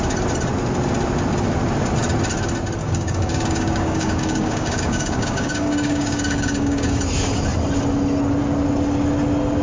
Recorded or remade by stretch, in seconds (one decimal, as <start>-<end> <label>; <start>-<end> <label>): 0.0-2.8 recorded; 2.8-7.0 remade; 7.0-9.6 recorded